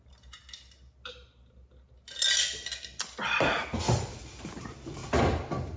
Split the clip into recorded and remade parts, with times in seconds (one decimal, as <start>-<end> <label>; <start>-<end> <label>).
0.0-0.4 remade; 0.4-3.9 recorded; 3.9-5.0 remade; 5.0-5.8 recorded